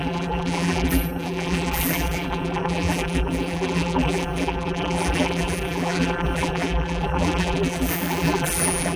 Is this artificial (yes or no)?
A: yes